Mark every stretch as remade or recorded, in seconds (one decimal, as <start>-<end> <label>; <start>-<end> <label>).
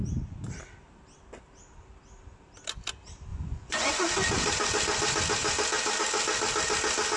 0.0-0.5 remade; 0.5-3.3 recorded; 3.3-4.0 remade; 4.0-7.2 recorded